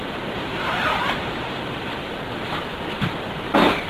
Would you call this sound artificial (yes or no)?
yes